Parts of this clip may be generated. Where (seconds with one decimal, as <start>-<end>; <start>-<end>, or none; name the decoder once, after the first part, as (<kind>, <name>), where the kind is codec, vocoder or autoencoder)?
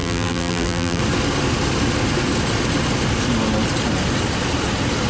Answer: 0.0-1.0 (vocoder, BigVGAN v2)